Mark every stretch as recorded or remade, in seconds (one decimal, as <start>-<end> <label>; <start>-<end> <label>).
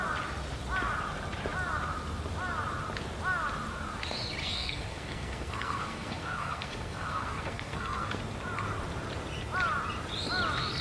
0.0-4.4 recorded; 4.4-8.2 remade; 8.2-10.8 recorded